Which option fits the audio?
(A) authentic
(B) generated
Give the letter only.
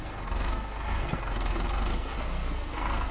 B